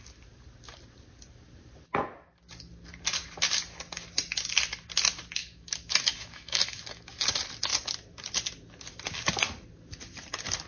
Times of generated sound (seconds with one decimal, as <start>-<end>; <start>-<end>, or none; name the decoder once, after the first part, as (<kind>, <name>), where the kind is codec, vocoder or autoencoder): 5.4-7.1 (autoencoder, DAC-VAE)